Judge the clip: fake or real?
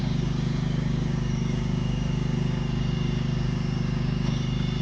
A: fake